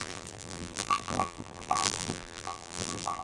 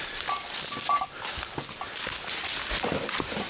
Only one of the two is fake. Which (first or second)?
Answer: first